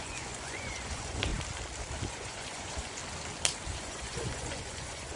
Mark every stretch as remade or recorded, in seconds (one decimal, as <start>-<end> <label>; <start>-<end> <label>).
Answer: 0.0-1.3 remade; 1.3-2.1 recorded; 2.1-3.0 remade; 3.0-3.7 recorded; 3.7-5.2 remade